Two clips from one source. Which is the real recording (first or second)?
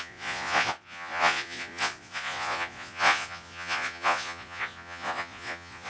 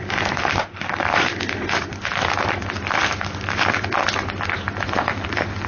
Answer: second